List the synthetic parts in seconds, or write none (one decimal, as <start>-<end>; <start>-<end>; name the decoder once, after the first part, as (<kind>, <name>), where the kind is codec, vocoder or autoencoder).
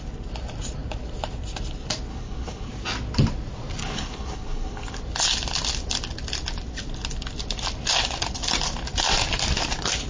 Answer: 2.1-2.7 (codec, HILCodec); 3.8-5.0